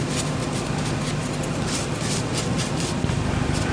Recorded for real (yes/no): yes